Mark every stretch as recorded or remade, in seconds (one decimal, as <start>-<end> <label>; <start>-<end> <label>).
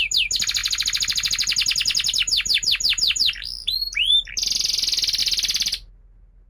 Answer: 0.0-0.6 recorded; 0.6-4.3 remade; 4.3-5.2 recorded; 5.2-5.9 remade; 5.9-6.5 recorded